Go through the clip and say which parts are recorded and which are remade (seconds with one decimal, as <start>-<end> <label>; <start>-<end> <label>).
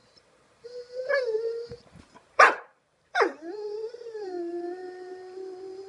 0.0-5.9 remade